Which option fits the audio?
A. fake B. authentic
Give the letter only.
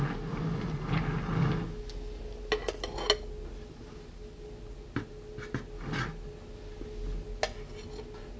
B